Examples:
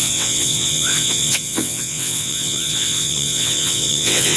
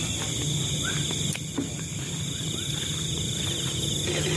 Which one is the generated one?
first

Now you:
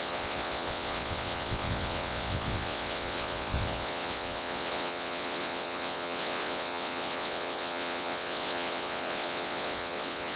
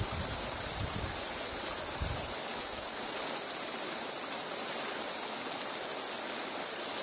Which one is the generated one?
first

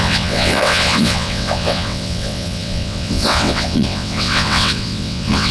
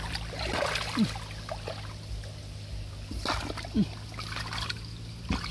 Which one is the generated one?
first